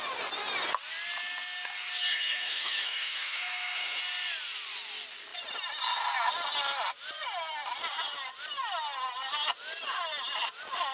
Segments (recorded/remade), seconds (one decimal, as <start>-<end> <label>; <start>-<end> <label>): 0.0-2.1 recorded; 2.1-4.0 remade; 4.0-10.9 recorded